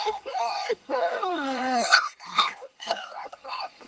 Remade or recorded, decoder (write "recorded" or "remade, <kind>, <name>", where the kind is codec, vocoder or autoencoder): remade, codec, SNAC